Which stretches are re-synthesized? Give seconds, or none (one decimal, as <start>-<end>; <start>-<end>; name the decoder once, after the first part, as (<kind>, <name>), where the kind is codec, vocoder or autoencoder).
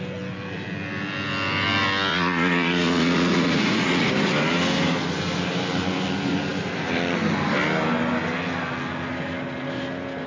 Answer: 2.1-4.1 (vocoder, Vocos)